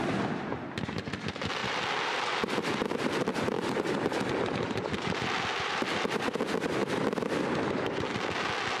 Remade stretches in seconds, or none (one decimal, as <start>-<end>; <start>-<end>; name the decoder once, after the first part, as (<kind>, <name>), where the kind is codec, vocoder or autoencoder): 1.6-6.0 (vocoder, BigVGAN v2); 6.8-8.0